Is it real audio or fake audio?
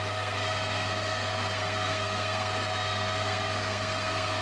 fake